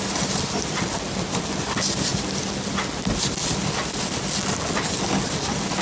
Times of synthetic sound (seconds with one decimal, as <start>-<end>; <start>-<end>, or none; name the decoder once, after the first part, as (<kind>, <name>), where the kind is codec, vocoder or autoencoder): none

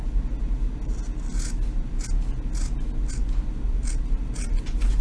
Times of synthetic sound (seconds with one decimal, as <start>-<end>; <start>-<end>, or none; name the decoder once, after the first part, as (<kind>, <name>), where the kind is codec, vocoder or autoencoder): none

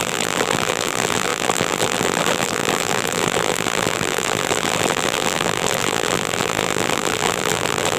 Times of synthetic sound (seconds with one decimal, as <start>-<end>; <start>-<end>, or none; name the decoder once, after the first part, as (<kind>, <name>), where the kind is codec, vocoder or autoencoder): 0.0-8.0 (vocoder, BigVGAN v2)